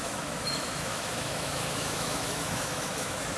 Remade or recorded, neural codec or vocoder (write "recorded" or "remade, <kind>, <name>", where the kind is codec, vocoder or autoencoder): remade, autoencoder, DAC-VAE